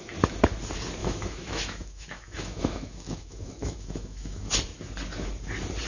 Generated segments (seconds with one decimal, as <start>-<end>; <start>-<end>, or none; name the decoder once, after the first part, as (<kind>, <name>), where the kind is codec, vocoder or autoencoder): 1.0-4.5 (autoencoder, DAC-VAE)